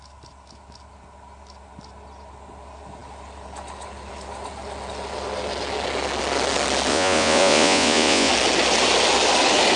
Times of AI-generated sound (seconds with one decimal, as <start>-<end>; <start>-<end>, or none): 6.9-8.3